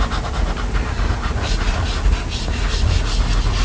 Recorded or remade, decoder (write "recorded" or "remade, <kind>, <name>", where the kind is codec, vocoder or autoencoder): recorded